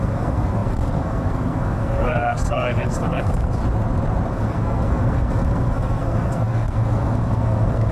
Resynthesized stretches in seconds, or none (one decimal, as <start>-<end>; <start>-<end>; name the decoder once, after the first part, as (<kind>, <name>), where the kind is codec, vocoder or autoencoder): 0.0-3.6 (codec, SNAC); 4.3-7.9